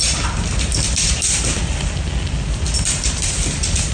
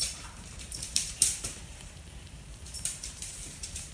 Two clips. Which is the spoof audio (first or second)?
second